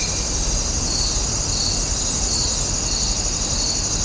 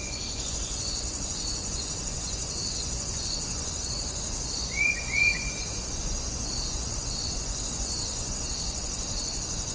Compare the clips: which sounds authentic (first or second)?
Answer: first